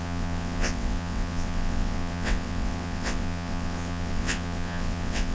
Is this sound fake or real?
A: fake